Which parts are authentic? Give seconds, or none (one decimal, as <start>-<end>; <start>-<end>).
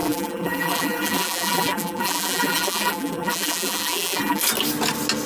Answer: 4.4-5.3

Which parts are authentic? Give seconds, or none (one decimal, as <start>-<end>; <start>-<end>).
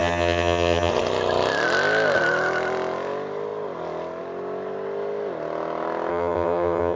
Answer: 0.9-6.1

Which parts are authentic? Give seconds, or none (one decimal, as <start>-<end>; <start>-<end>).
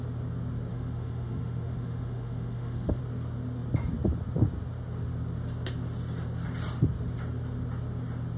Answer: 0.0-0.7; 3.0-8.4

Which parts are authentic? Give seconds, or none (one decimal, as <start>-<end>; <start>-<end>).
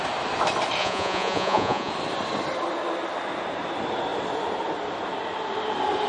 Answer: 0.0-0.8; 1.9-6.1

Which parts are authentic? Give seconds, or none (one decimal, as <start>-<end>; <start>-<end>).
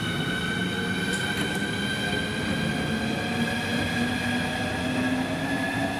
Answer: 0.0-6.0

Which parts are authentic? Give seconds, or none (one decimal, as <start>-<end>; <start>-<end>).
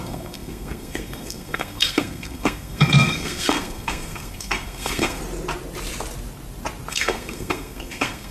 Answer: 5.2-6.9